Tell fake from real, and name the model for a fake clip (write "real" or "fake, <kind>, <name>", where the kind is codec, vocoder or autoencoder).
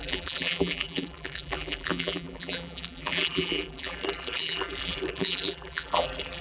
fake, vocoder, BigVGAN v2